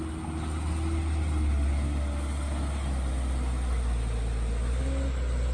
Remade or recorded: recorded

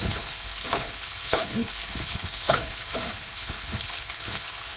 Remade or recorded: remade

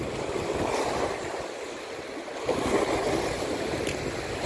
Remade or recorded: recorded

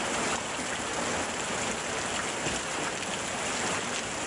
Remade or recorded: recorded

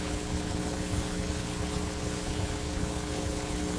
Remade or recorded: remade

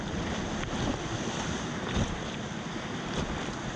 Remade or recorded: recorded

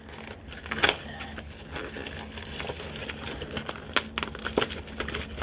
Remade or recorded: recorded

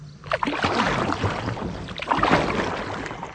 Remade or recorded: recorded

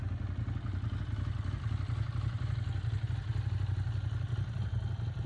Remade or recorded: recorded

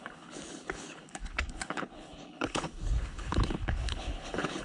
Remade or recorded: remade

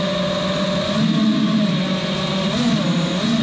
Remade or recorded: recorded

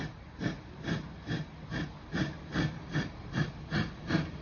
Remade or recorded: recorded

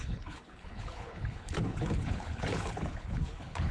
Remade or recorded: remade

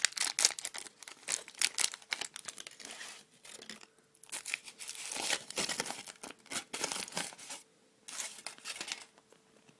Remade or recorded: recorded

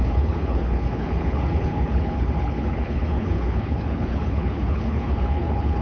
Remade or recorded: remade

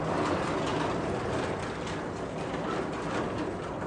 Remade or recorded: recorded